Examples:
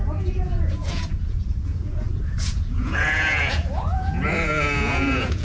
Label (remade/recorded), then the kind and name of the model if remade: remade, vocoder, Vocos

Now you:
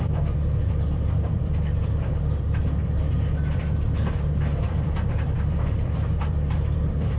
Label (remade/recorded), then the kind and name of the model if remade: remade, vocoder, BigVGAN v2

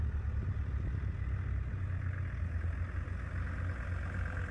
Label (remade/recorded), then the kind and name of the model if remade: recorded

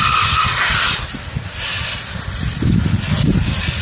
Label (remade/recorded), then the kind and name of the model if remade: recorded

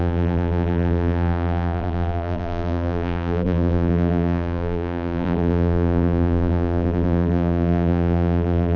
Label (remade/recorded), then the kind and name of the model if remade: remade, vocoder, BigVGAN v2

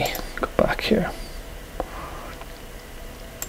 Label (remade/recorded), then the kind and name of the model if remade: recorded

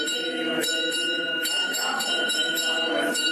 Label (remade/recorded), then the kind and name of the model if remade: remade, autoencoder, DAC-VAE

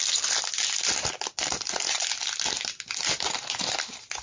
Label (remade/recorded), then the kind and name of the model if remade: recorded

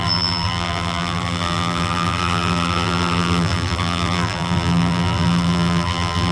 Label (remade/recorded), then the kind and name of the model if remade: remade, vocoder, BigVGAN v2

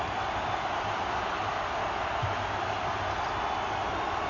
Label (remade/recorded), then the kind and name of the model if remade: recorded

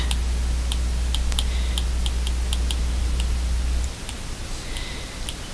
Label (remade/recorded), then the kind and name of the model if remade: recorded